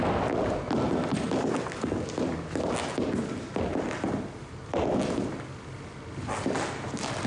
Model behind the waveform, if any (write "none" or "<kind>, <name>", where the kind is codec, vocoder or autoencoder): none